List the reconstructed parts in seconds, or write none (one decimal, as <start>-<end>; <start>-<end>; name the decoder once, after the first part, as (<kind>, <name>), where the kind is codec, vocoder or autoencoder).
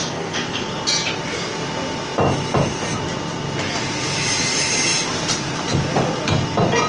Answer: 0.0-0.7 (codec, SNAC)